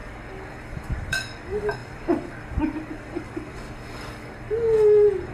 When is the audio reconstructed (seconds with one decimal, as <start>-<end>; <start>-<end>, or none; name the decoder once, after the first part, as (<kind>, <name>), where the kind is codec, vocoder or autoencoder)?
0.0-5.3 (codec, DAC)